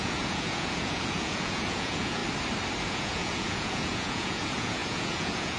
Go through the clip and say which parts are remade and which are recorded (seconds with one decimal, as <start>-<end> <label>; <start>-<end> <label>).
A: 0.0-2.2 remade; 2.2-2.9 recorded; 2.9-5.6 remade